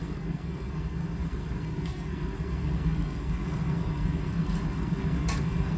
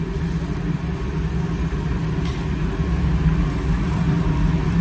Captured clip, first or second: second